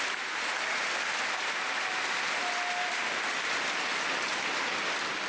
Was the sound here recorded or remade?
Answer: recorded